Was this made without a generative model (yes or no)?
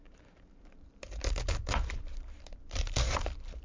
no